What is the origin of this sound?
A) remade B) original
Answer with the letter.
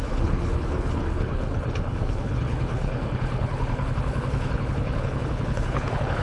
A